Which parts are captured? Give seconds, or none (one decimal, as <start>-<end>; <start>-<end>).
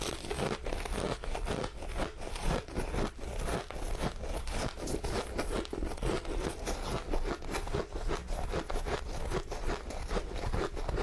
0.0-11.0